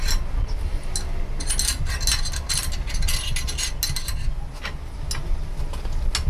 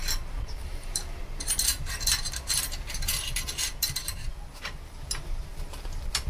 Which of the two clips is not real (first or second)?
second